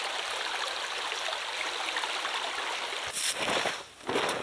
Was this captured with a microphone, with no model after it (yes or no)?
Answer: yes